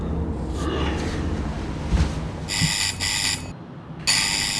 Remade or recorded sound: recorded